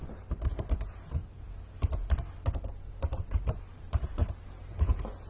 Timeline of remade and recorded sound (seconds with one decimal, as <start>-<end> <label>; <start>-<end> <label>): 0.0-3.2 recorded; 3.2-4.2 remade; 4.2-5.3 recorded